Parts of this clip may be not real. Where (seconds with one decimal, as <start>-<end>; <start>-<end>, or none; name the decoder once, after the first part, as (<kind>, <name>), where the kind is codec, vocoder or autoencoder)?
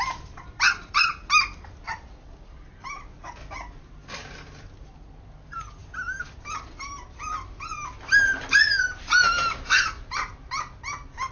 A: none